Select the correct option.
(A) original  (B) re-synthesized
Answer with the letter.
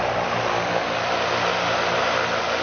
A